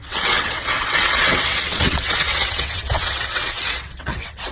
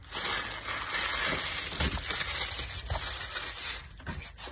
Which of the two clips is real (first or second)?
second